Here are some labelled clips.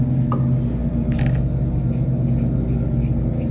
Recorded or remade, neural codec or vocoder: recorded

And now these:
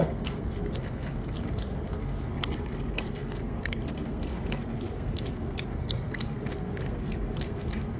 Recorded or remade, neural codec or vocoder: remade, codec, SNAC